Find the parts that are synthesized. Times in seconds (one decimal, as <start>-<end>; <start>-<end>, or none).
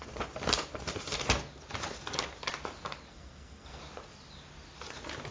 3.1-3.8